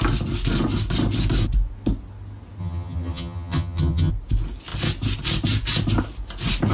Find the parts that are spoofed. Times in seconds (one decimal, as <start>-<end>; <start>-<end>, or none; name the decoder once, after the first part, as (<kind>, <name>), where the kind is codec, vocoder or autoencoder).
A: 2.6-4.1 (vocoder, HiFi-GAN)